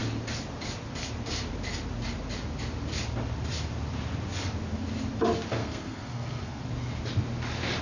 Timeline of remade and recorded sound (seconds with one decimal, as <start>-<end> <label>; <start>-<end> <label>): 0.0-5.6 recorded; 5.6-6.6 remade; 6.6-7.8 recorded